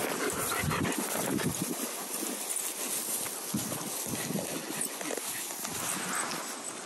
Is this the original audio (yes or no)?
yes